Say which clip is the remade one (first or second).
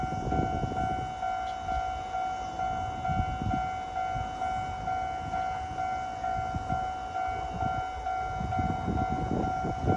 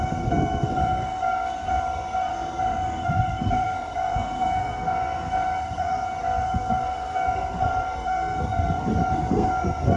second